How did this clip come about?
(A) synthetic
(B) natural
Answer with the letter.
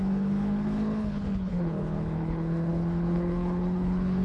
A